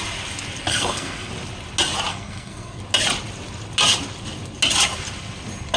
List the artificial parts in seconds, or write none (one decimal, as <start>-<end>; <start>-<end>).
0.7-1.3; 2.1-2.8

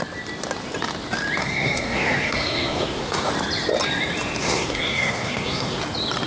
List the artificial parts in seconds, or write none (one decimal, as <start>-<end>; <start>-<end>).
1.4-3.3; 4.4-5.8